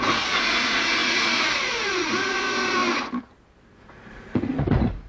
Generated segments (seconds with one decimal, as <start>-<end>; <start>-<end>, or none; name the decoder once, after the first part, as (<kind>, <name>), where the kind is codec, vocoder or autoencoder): 0.0-2.8 (vocoder, Vocos); 3.9-5.1